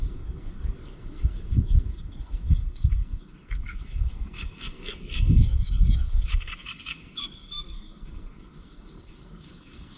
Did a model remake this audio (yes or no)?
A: yes